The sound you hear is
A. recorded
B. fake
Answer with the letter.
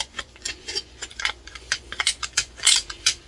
B